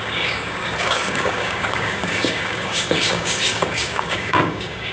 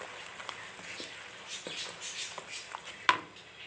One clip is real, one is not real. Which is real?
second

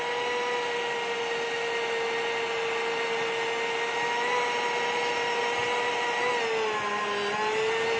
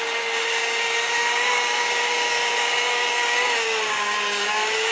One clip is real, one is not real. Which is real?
first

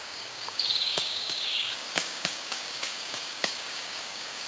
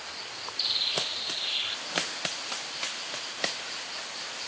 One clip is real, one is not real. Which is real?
second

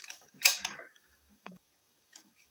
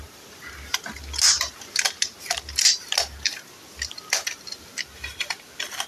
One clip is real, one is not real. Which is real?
second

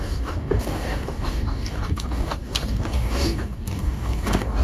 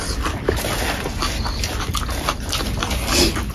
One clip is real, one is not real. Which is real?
second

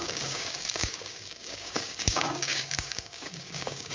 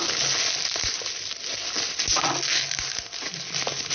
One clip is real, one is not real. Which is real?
second